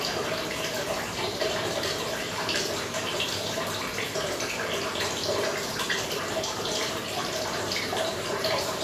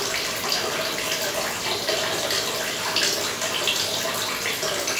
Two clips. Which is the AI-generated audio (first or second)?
first